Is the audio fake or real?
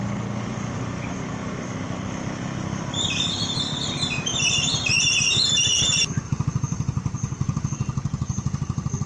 fake